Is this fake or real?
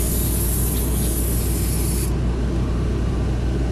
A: real